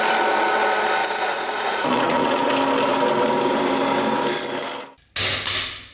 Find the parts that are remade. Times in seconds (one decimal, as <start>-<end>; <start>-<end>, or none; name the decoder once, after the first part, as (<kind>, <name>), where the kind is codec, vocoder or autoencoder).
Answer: 1.0-2.5 (vocoder, Vocos)